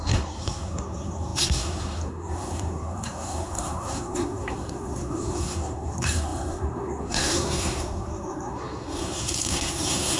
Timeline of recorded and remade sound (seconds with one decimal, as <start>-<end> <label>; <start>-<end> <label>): 0.0-10.2 remade